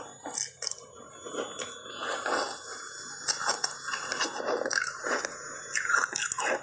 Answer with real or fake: real